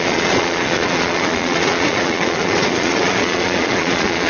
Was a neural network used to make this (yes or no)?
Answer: yes